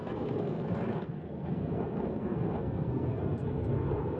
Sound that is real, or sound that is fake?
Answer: fake